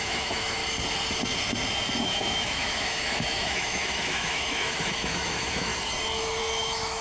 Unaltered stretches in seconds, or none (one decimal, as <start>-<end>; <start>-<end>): 0.6-2.0; 5.7-6.4